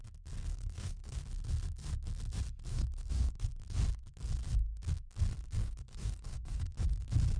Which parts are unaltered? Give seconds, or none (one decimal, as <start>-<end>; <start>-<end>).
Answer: 0.0-0.5; 1.2-2.7; 3.5-5.6; 6.7-7.4